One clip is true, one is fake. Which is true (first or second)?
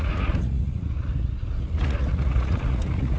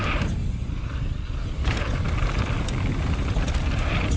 second